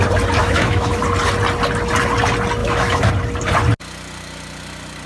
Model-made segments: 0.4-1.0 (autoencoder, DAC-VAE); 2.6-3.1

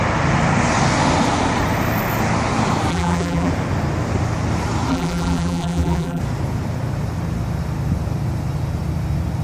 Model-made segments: 2.9-3.5 (vocoder, BigVGAN v2); 4.9-6.2

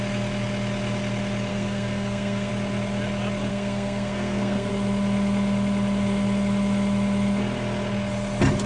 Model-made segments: 1.5-2.5 (codec, SNAC); 3.5-4.7

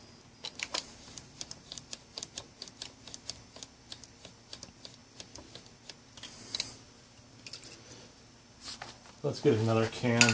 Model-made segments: 0.7-2.4 (vocoder, BigVGAN v2)

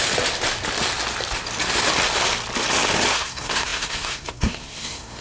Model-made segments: 3.1-5.2 (codec, SNAC)